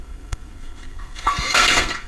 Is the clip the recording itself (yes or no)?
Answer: no